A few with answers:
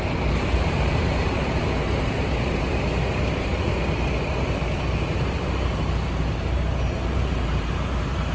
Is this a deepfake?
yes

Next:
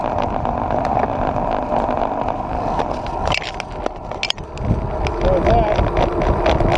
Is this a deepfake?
no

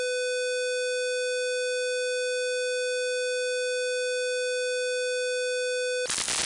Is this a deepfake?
no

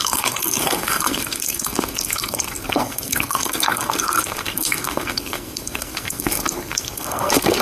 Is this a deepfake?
yes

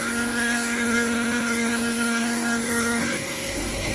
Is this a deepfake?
yes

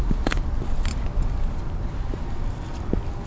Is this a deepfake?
no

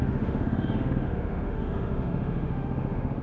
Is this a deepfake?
yes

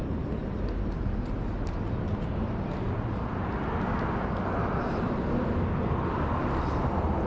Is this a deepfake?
no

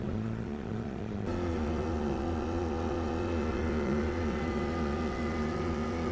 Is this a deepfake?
yes